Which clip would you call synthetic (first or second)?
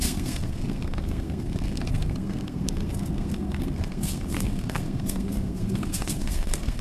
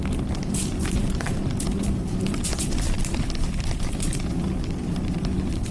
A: first